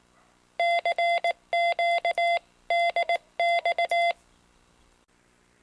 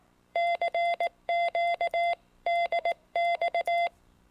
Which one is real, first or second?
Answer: first